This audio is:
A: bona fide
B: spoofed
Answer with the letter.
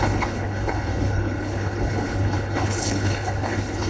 B